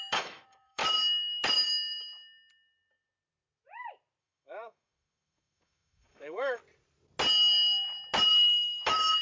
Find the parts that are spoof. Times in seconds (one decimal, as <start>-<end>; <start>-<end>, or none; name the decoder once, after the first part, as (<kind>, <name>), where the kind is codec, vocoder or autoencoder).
0.0-0.8 (autoencoder, DAC-VAE); 4.2-6.6; 8.3-9.2